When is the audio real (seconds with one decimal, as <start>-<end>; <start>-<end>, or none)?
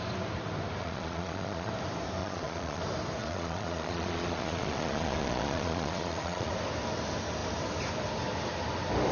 0.0-0.8; 1.7-2.2; 2.8-3.2; 6.5-9.1